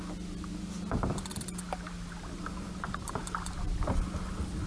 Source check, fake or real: real